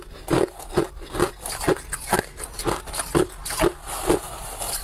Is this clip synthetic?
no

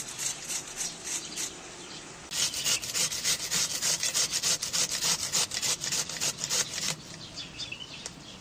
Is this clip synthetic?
no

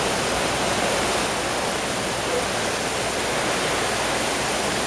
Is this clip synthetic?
yes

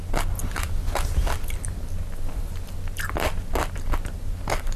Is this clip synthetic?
no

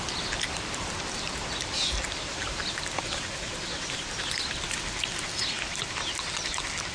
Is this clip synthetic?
no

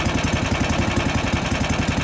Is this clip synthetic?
no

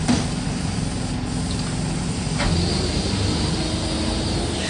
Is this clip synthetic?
no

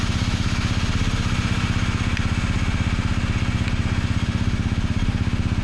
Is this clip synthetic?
no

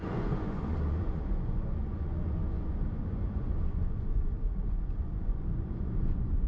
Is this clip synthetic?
yes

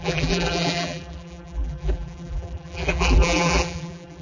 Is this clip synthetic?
yes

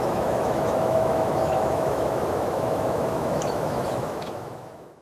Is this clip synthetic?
yes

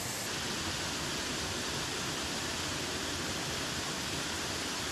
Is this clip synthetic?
no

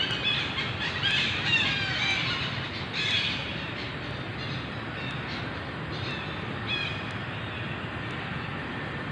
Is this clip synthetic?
no